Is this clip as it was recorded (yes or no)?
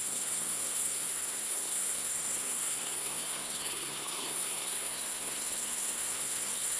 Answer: no